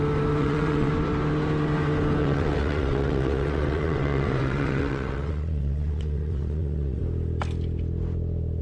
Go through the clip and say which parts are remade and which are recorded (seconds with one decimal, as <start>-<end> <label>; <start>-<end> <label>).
0.0-0.4 recorded; 0.4-0.9 remade; 0.9-2.2 recorded; 2.2-7.0 remade; 7.0-8.6 recorded